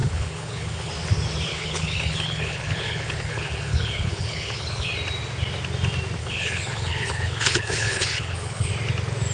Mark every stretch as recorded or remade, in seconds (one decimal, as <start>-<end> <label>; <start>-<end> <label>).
0.0-0.9 remade; 0.9-1.5 recorded; 1.5-4.9 remade; 4.9-6.2 recorded; 6.2-8.7 remade; 8.7-9.3 recorded

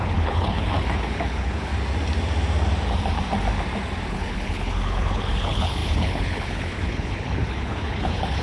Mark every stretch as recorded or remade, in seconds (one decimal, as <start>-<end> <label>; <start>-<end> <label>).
0.0-1.7 remade; 1.7-4.1 recorded; 4.1-8.4 remade

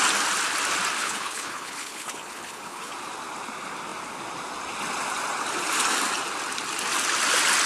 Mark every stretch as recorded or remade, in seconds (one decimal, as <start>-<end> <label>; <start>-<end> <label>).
0.0-1.0 recorded; 1.0-2.9 remade; 2.9-7.7 recorded

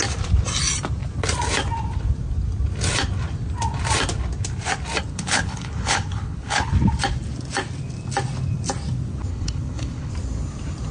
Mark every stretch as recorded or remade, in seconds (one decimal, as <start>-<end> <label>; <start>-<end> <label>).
0.0-5.1 recorded; 5.1-6.7 remade; 6.7-9.3 recorded; 9.3-10.1 remade; 10.1-10.9 recorded

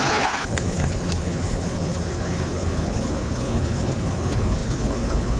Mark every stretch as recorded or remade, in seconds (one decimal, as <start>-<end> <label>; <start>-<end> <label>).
0.0-5.4 remade